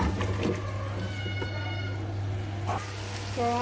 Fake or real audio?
real